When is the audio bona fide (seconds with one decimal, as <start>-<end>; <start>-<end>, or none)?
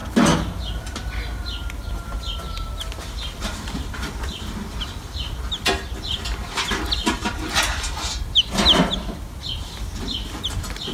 0.0-10.9